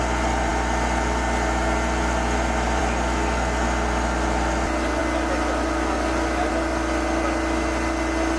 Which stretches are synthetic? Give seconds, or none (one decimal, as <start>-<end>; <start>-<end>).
none